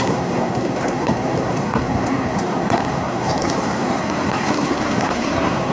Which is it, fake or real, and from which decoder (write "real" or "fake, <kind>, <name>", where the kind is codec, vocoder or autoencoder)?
fake, codec, SNAC